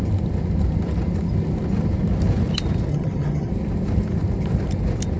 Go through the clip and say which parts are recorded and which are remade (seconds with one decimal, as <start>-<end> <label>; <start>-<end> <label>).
0.0-2.9 recorded; 2.9-3.5 remade; 3.5-5.2 recorded